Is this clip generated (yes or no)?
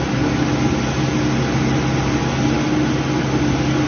no